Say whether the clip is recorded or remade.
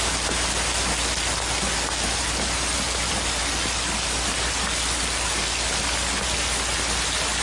recorded